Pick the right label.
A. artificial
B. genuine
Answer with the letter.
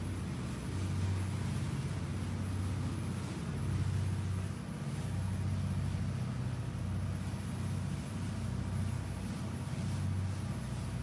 B